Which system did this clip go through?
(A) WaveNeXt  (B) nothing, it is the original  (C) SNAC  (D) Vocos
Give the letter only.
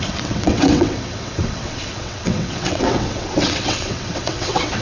A